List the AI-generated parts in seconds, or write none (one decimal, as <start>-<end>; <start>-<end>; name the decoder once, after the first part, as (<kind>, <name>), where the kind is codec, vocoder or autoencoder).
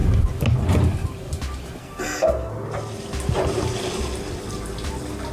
1.8-2.5 (codec, SNAC)